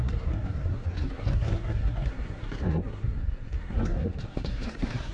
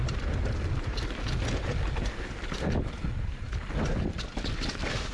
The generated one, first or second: first